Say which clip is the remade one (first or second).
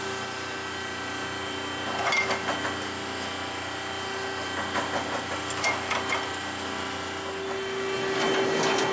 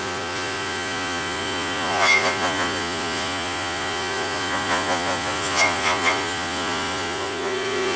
second